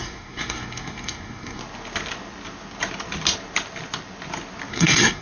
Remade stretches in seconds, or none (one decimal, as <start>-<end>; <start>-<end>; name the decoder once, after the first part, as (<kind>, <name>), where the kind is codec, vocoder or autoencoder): 0.0-1.6 (codec, SNAC); 4.7-5.2